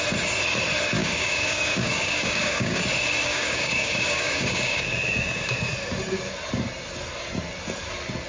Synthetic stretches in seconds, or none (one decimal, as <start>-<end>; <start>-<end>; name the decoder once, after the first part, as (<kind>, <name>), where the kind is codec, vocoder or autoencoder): 1.0-2.8 (codec, DAC); 3.3-5.7